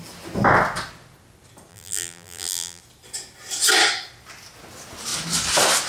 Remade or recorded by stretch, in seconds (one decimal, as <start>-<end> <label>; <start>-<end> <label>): 0.0-1.7 recorded; 1.7-2.8 remade; 2.8-5.9 recorded